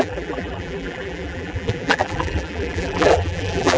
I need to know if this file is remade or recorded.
remade